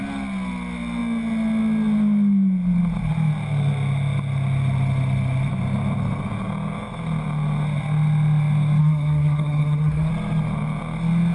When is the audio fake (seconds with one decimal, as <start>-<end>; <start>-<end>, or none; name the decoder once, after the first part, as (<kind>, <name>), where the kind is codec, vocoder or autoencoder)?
8.8-10.1 (codec, SNAC)